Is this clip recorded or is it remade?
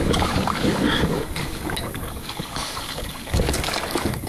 remade